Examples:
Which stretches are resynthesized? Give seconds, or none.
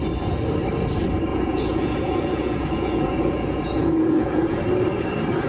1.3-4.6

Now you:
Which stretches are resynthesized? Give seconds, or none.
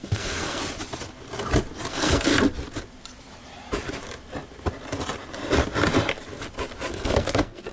0.0-0.6; 1.9-2.3; 6.9-7.7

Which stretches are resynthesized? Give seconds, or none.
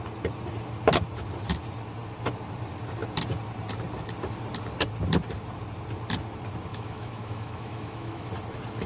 6.7-8.3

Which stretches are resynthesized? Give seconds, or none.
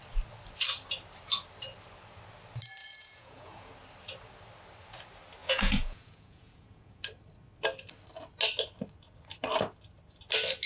2.8-3.7; 5.4-7.0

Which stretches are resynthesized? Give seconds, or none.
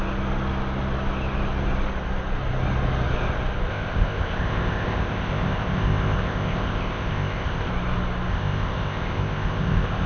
3.7-7.7; 8.3-10.1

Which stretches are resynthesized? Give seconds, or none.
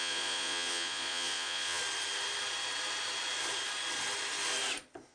0.0-1.8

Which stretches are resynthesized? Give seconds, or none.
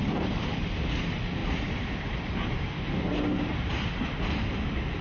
none